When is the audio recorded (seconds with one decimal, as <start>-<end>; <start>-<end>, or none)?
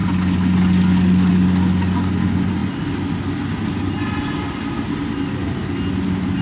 0.0-6.4